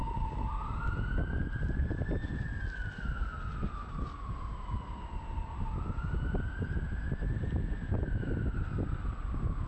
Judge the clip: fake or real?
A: real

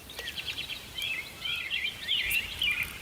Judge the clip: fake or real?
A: real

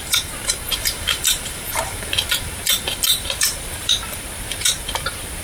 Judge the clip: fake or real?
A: fake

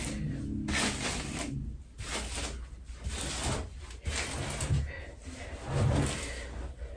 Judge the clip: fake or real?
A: real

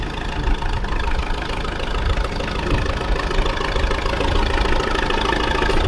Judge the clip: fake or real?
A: real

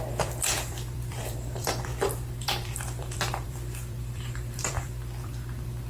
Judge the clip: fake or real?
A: fake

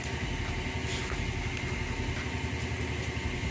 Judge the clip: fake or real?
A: real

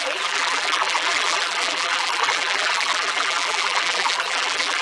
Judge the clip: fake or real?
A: fake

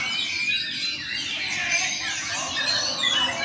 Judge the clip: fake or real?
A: real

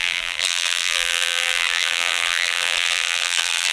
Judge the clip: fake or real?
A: fake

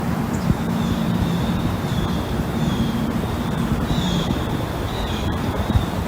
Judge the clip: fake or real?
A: fake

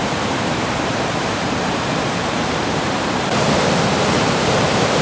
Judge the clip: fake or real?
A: fake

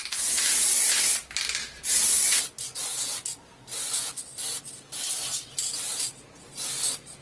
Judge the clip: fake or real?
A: real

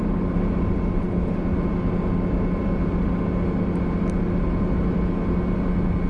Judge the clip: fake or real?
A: real